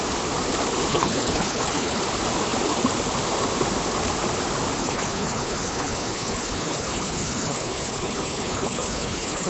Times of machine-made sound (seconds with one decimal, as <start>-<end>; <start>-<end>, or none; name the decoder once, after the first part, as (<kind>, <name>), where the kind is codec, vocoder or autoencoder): 0.9-2.0 (codec, HILCodec); 4.8-9.5